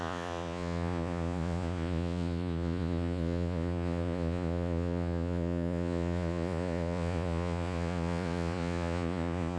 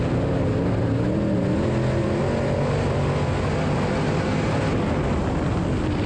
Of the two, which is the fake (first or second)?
first